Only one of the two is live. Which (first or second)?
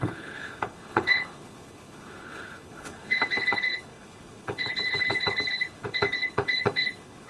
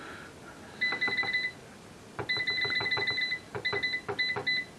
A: second